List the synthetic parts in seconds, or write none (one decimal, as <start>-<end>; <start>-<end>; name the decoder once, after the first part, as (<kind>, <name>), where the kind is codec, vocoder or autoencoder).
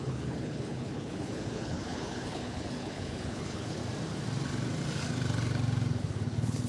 0.0-3.8 (codec, HILCodec); 6.0-6.7